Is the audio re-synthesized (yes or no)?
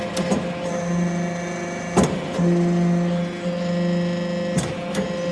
no